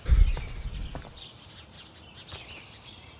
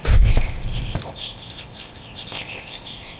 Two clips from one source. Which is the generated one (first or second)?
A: second